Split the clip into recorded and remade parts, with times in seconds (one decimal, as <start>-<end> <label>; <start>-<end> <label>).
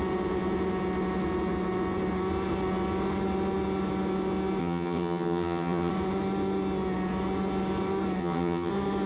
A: 0.0-4.6 recorded; 4.6-5.9 remade; 5.9-8.2 recorded; 8.2-8.7 remade; 8.7-9.1 recorded